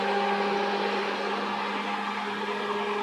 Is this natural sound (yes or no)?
yes